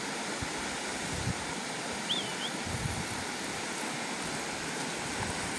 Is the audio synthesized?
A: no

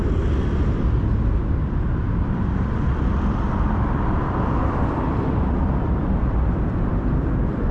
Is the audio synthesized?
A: yes